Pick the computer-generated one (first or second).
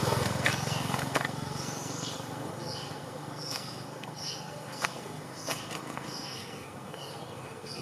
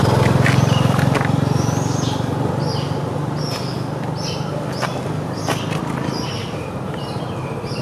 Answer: first